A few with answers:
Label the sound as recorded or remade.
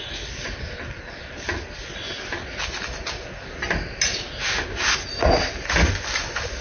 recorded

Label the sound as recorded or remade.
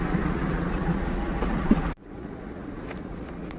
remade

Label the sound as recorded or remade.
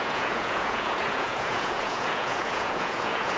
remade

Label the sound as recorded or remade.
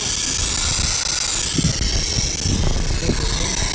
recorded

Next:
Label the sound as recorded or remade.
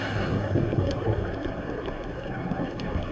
remade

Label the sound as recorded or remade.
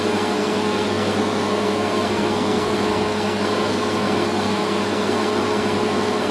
remade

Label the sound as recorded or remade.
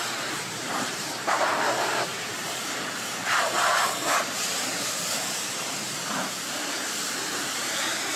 remade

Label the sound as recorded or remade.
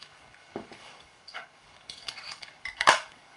remade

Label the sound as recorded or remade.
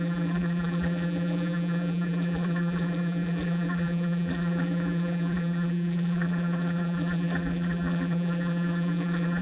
remade